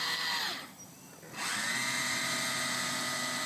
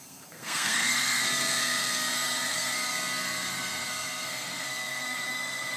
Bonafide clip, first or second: first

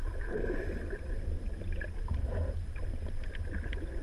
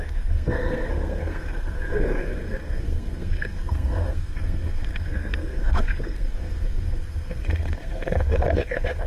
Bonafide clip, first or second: first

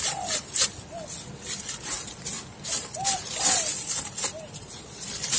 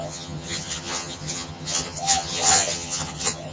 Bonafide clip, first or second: first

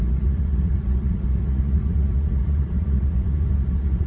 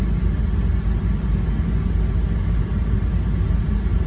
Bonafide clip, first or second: second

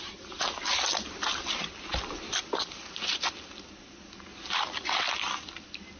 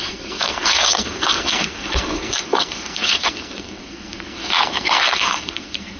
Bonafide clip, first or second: first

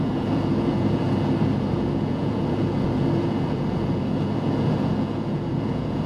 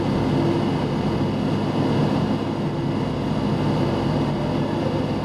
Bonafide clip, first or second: second